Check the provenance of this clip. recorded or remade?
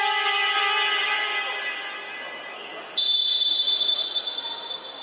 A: remade